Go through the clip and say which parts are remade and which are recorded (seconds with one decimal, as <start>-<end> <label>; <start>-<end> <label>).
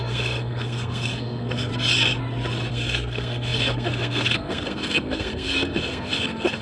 0.0-1.7 remade; 1.7-2.7 recorded; 2.7-6.6 remade